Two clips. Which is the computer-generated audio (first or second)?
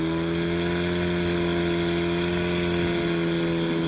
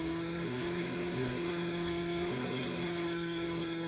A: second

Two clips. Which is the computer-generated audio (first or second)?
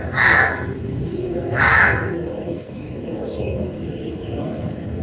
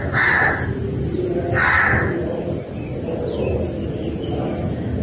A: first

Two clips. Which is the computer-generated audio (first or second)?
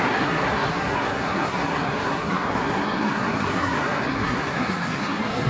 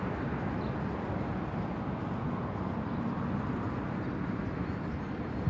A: first